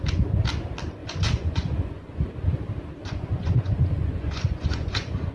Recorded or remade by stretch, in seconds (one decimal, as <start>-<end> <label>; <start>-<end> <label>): 0.0-1.0 recorded; 1.0-2.2 remade; 2.2-3.0 recorded; 3.0-5.3 remade